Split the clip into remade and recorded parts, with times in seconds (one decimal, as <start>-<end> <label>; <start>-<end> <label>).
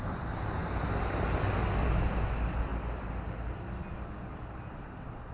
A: 0.0-5.3 recorded